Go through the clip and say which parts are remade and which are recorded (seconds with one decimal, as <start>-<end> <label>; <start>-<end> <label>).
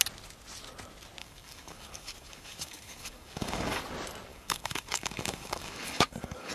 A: 0.0-1.2 recorded; 1.2-3.8 remade; 3.8-4.3 recorded; 4.3-6.5 remade